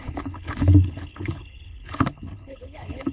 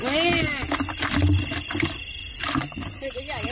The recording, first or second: second